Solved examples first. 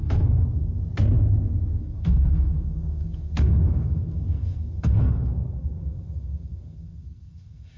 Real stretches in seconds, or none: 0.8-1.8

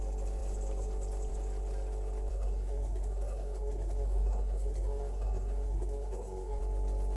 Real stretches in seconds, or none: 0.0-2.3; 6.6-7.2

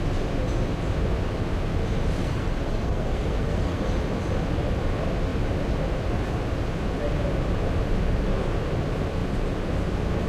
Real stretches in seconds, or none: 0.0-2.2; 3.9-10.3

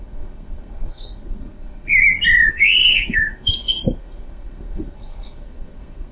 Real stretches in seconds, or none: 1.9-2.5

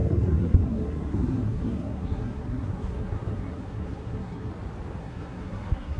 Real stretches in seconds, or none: 4.5-5.0

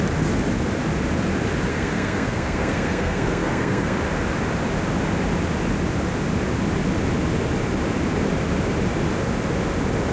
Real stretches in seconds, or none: 0.0-1.7; 4.0-10.1